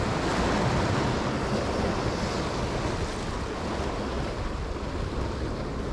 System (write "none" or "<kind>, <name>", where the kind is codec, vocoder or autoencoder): none